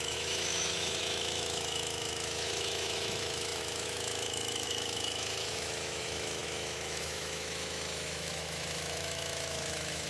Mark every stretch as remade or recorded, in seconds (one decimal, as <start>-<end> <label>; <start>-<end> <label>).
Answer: 0.0-10.1 remade